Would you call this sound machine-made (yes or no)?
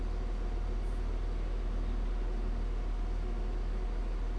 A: no